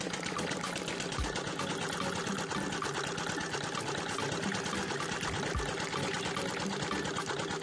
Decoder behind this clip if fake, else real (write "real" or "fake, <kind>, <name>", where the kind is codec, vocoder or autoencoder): real